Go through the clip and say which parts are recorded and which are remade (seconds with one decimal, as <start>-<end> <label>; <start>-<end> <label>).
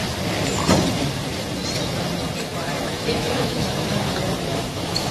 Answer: 0.0-2.5 recorded; 2.5-5.1 remade